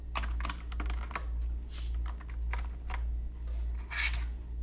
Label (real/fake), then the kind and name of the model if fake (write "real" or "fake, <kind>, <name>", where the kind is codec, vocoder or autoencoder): real